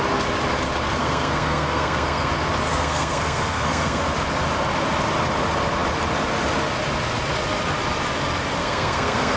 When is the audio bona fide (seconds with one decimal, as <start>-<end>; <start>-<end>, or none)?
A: 0.0-1.0; 2.3-2.7; 4.0-8.6